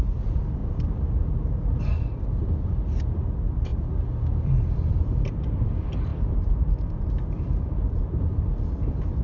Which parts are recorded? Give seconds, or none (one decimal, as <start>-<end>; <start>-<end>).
0.6-1.8; 3.7-4.4